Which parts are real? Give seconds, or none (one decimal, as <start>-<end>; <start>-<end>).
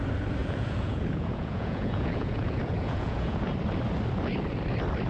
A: 0.0-0.4; 3.5-5.1